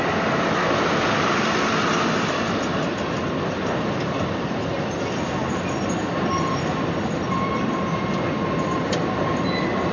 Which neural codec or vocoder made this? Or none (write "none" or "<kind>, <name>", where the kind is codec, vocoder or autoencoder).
none